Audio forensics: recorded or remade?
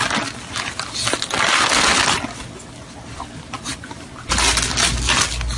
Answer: recorded